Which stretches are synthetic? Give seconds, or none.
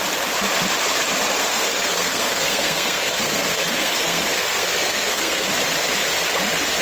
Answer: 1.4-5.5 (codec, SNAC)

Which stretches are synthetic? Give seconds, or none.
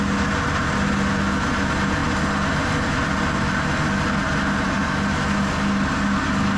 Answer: none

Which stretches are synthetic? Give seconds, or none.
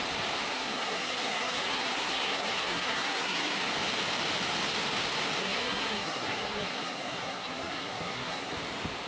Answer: 0.5-3.6 (codec, SNAC); 5.4-8.5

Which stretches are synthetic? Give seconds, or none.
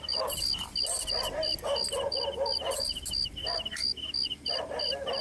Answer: none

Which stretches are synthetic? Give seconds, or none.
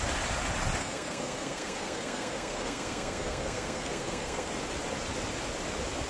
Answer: 0.8-4.5 (codec, SNAC)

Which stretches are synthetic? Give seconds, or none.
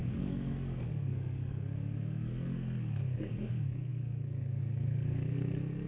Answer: 0.0-5.9 (codec, SNAC)